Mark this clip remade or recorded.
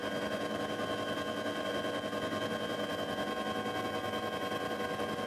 recorded